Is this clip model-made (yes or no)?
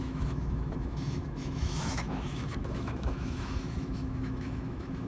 yes